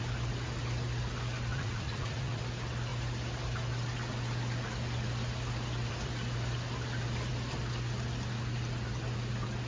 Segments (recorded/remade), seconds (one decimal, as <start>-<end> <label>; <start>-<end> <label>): 0.0-1.5 recorded; 1.5-2.4 remade; 2.4-9.7 recorded